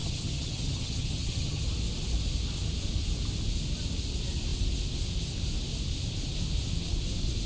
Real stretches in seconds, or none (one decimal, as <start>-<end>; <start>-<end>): 1.6-7.5